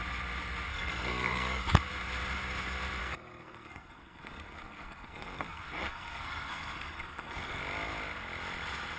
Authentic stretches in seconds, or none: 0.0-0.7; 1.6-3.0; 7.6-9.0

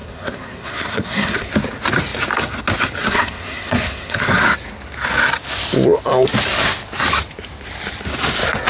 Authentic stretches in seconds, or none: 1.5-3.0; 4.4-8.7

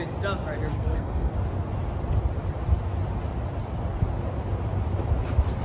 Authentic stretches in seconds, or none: 0.0-0.7; 1.3-5.6

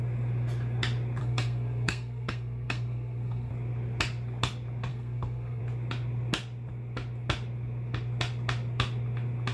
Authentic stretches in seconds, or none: 0.0-1.2; 3.5-4.9; 5.6-9.5